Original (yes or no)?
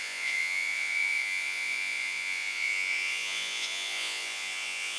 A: no